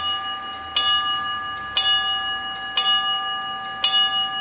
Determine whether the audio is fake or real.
real